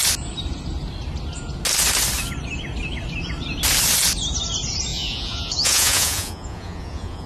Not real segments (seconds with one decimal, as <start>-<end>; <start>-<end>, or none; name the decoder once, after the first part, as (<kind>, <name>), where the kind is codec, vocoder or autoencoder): 4.9-7.3 (vocoder, Vocos)